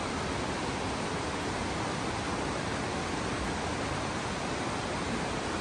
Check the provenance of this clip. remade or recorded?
recorded